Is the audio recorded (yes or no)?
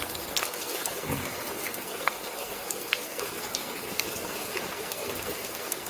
no